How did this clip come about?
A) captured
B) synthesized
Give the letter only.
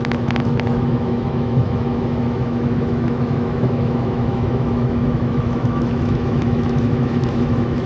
B